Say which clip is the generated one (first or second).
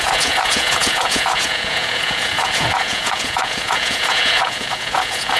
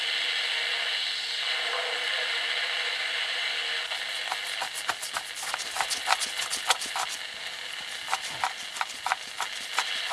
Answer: first